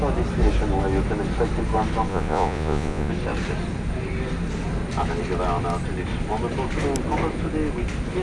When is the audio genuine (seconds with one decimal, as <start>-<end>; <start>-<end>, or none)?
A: 0.0-2.1; 3.1-8.2